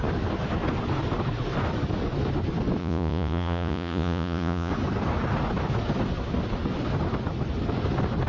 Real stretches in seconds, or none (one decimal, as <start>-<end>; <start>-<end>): 0.0-2.8; 4.7-8.3